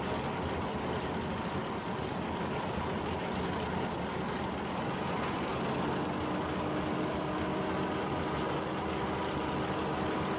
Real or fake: real